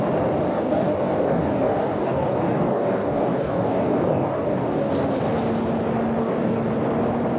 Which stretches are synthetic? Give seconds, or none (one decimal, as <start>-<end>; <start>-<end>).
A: 0.5-4.9; 6.2-6.7